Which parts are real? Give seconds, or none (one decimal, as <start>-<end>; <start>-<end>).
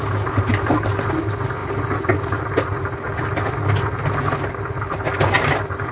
0.0-5.9